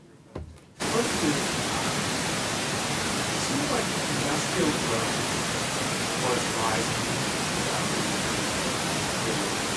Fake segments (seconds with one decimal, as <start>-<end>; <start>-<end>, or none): none